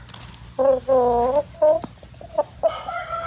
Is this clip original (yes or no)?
yes